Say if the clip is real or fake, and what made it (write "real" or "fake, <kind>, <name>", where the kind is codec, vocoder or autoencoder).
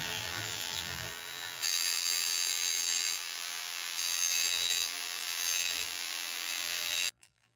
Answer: fake, vocoder, BigVGAN v2